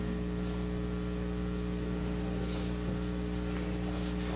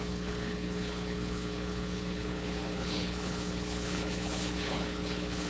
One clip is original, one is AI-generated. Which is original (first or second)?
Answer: first